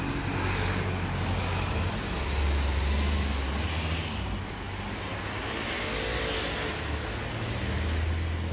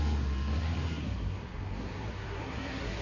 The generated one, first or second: second